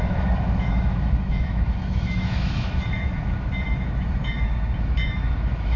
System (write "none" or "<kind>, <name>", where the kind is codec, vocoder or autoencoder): autoencoder, DAC-VAE